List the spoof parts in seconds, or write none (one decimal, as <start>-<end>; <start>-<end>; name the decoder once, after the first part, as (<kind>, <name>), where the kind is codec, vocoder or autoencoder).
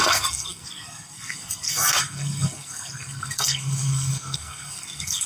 0.0-5.3 (codec, SNAC)